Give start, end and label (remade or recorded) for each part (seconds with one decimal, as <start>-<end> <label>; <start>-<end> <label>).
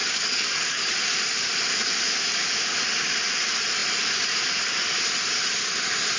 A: 0.0-0.9 remade; 0.9-6.2 recorded